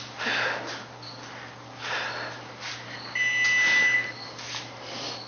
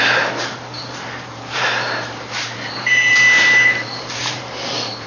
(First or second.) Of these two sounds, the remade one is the second